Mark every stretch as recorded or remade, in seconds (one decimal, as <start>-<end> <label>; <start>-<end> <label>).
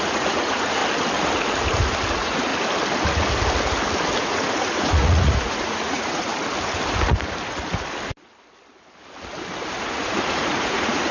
0.0-0.8 remade; 0.8-2.1 recorded; 2.1-2.5 remade; 2.5-4.2 recorded; 4.2-6.3 remade; 6.3-9.7 recorded; 9.7-11.1 remade